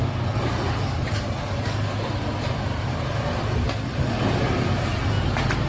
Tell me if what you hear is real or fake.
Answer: real